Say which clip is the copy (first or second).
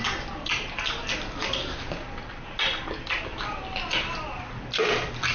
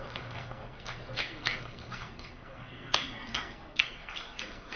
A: second